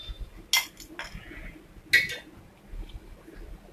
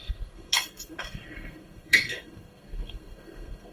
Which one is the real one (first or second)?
first